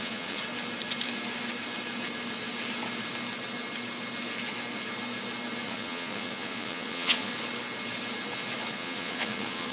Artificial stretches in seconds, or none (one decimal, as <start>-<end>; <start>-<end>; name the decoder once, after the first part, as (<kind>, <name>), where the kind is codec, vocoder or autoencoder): 0.0-0.4 (vocoder, Vocos); 5.6-7.3; 8.7-9.7